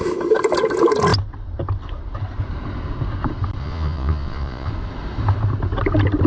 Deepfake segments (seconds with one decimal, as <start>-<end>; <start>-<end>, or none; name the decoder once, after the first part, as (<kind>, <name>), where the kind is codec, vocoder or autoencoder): 3.6-4.7 (vocoder, Vocos)